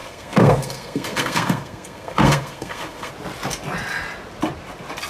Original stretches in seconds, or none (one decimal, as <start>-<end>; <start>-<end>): 3.1-5.1